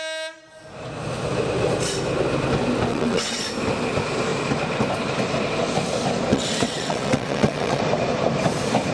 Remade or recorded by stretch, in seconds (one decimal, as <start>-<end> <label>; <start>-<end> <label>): 0.0-2.9 recorded; 2.9-3.4 remade; 3.4-6.3 recorded; 6.3-7.8 remade; 7.8-8.9 recorded